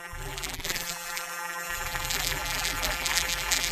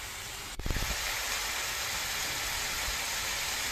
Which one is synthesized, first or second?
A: first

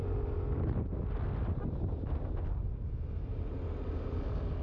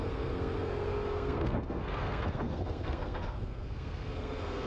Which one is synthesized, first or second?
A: second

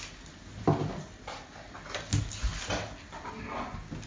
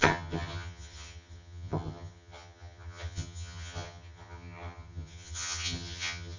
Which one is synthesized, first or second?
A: second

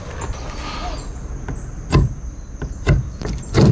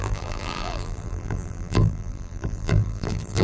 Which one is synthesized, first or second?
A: second